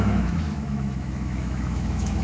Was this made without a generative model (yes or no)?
no